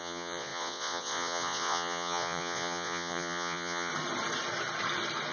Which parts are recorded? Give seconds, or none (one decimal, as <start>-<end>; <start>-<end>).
3.9-5.3